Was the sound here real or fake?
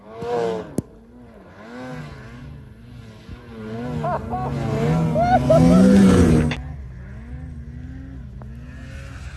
real